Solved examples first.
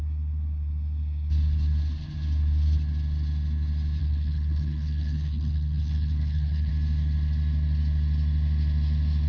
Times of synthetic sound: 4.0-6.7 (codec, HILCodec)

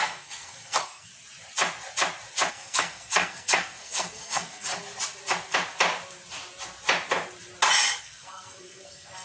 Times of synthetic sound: 0.0-1.1 (codec, SNAC); 2.5-4.7; 8.0-9.2

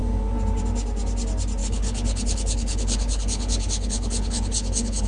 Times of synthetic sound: 1.6-5.1 (codec, HILCodec)

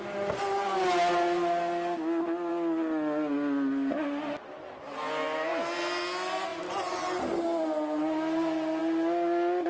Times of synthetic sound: none

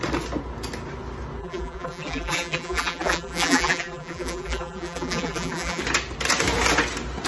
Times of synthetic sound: 1.4-5.8 (vocoder, BigVGAN v2)